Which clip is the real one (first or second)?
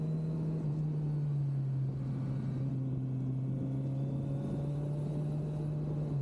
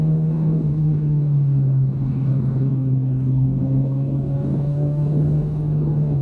first